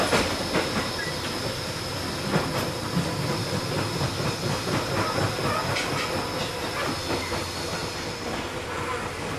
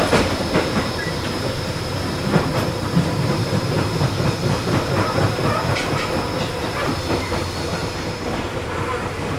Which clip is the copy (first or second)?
second